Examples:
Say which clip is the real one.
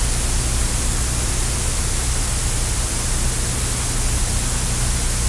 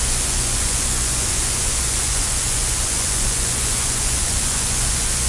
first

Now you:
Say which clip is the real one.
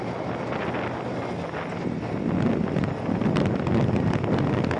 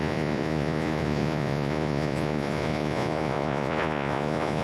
first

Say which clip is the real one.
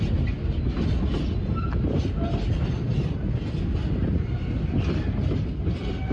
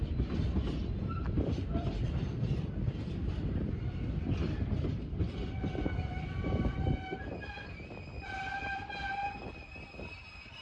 first